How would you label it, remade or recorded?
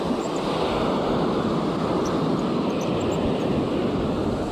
recorded